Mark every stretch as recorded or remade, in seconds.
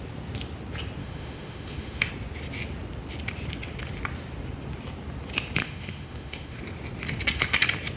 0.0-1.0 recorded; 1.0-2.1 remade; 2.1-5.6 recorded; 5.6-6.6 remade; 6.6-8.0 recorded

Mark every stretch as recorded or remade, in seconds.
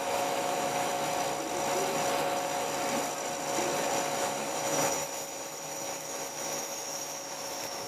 0.0-0.9 remade; 0.9-4.2 recorded; 4.2-7.9 remade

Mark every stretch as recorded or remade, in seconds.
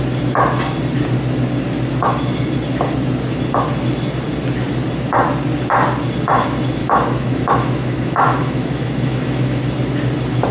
0.0-6.8 recorded; 6.8-9.6 remade; 9.6-10.5 recorded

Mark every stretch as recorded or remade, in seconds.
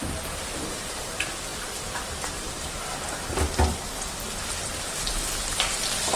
0.0-6.2 recorded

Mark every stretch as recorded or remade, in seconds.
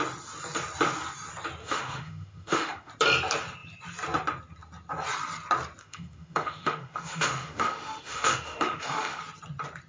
0.0-1.6 recorded; 1.6-2.9 remade; 2.9-5.8 recorded; 5.8-9.2 remade; 9.2-9.9 recorded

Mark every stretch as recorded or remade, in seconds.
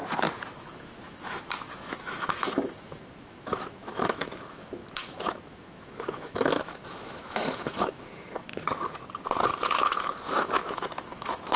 0.0-0.6 recorded; 0.6-8.5 remade; 8.5-9.6 recorded; 9.6-11.6 remade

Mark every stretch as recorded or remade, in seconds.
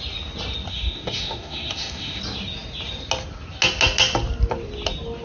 0.0-0.7 recorded; 0.7-2.2 remade; 2.2-5.2 recorded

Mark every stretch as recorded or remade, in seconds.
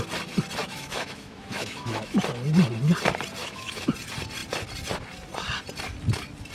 0.0-0.6 recorded; 0.6-2.2 remade; 2.2-3.4 recorded; 3.4-3.9 remade; 3.9-6.5 recorded